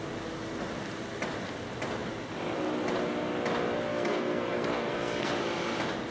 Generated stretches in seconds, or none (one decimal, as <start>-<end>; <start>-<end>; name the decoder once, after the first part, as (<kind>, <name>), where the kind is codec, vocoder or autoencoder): 3.9-5.3 (codec, SNAC)